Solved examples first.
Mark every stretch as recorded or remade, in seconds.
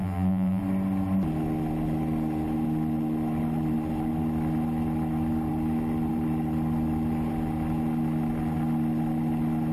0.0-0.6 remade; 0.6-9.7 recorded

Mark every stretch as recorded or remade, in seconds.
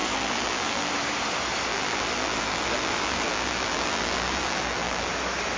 0.0-0.9 remade; 0.9-1.7 recorded; 1.7-5.1 remade; 5.1-5.6 recorded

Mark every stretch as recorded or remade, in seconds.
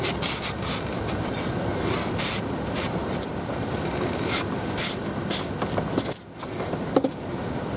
0.0-3.0 recorded; 3.0-5.0 remade; 5.0-7.8 recorded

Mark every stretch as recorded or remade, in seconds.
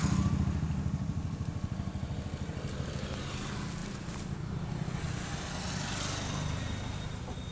0.0-3.8 recorded; 3.8-5.0 remade; 5.0-7.5 recorded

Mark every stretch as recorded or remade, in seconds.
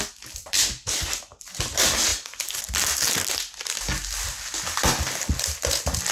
0.0-2.1 remade; 2.1-5.6 recorded; 5.6-6.1 remade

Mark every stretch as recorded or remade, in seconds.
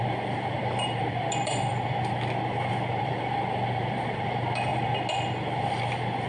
0.0-1.7 remade; 1.7-3.0 recorded; 3.0-4.7 remade; 4.7-6.3 recorded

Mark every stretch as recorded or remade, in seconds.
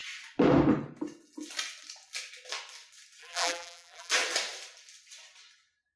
0.0-3.2 recorded; 3.2-4.1 remade; 4.1-6.0 recorded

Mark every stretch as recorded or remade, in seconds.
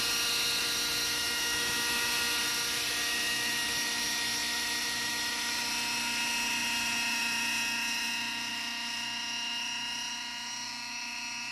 0.0-11.5 recorded